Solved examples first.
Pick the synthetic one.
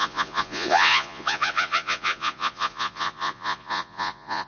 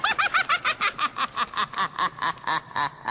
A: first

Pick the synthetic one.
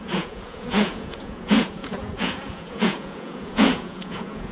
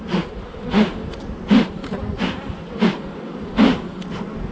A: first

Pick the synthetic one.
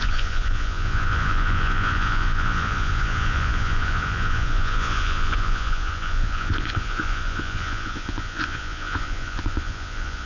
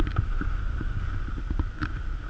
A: first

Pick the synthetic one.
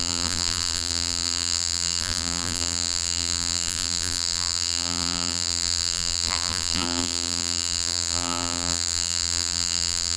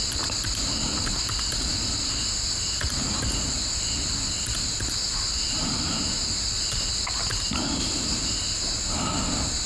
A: first